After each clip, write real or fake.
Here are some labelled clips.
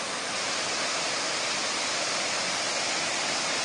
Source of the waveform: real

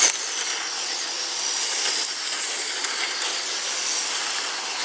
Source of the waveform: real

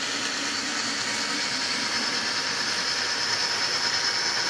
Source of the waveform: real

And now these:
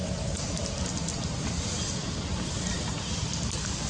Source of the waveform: real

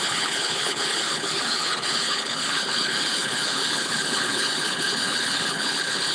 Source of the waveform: fake